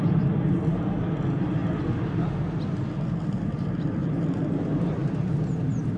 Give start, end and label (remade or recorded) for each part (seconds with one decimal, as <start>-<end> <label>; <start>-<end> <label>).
0.0-6.0 recorded